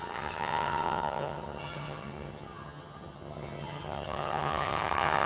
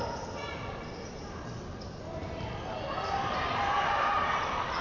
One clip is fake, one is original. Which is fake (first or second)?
first